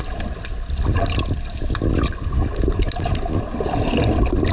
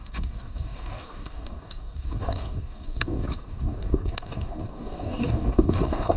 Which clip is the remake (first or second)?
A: second